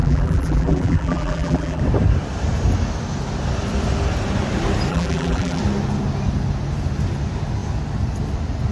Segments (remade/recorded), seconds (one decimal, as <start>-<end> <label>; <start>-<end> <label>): 0.0-1.8 remade; 1.8-4.9 recorded; 4.9-5.6 remade; 5.6-8.7 recorded